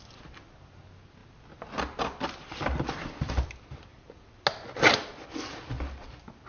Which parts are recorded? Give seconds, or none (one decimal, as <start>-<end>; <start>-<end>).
0.0-6.5